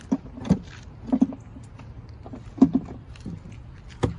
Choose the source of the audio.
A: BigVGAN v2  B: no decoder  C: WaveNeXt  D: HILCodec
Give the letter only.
B